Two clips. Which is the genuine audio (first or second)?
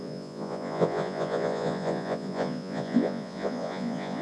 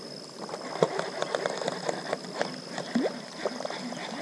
second